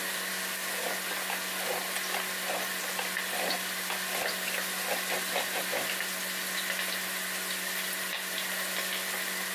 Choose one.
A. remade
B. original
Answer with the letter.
B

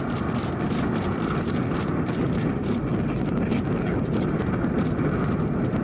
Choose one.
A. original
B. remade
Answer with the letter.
A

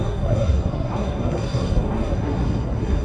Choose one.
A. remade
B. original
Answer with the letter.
A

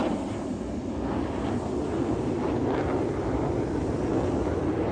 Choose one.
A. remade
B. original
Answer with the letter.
B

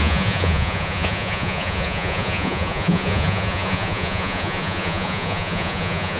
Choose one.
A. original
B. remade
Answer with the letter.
B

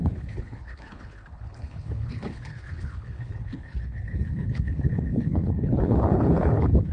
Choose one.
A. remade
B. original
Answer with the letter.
A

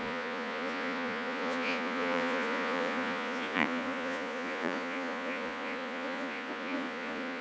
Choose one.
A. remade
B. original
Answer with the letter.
A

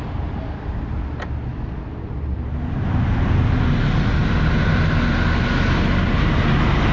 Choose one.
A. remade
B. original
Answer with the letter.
B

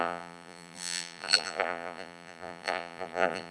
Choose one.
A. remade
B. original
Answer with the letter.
A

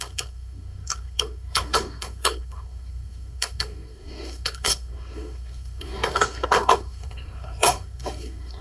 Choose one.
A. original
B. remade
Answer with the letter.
B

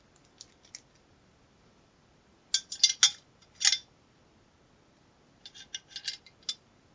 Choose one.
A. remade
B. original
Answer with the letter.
B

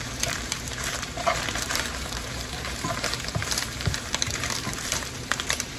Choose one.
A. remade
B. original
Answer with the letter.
A